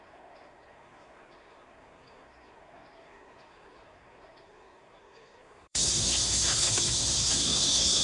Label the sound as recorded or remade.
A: remade